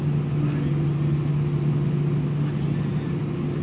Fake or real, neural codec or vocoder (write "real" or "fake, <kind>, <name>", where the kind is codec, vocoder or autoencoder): real